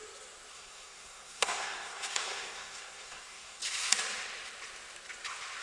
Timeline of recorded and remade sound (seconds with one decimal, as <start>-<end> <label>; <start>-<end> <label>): 0.0-0.5 recorded; 0.5-3.6 remade; 3.6-5.6 recorded